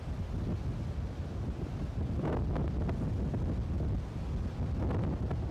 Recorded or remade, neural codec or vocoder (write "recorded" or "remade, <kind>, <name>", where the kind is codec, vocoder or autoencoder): recorded